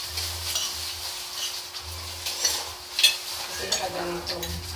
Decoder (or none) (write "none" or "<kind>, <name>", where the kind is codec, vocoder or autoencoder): none